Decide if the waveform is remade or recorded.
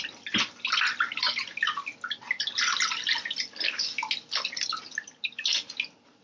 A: recorded